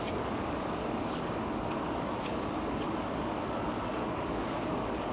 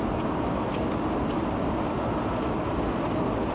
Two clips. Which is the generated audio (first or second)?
first